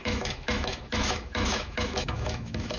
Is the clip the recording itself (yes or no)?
no